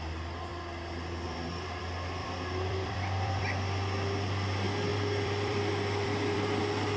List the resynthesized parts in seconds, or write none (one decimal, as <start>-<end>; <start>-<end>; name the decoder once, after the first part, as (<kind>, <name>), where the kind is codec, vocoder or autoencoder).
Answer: 0.5-1.8 (vocoder, BigVGAN v2); 2.2-3.4; 4.9-6.6